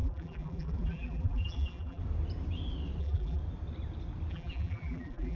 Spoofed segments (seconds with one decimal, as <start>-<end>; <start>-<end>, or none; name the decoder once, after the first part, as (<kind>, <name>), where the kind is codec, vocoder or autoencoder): 0.0-2.0 (vocoder, BigVGAN v2); 3.0-3.4; 4.3-5.4